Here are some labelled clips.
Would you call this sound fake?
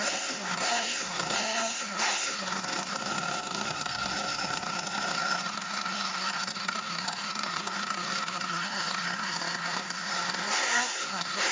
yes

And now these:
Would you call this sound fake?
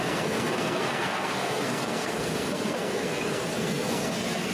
yes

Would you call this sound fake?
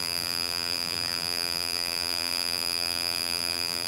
yes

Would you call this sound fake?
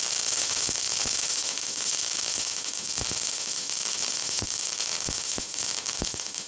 yes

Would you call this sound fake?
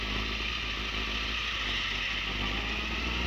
no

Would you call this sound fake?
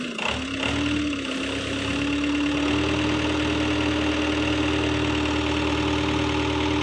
no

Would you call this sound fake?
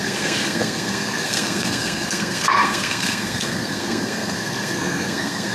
yes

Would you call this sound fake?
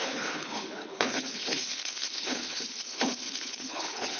yes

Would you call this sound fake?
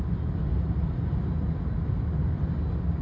no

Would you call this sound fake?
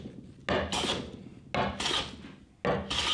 no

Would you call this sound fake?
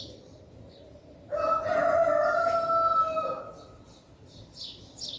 no